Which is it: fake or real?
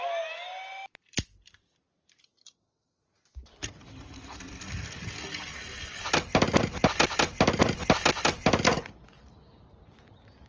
real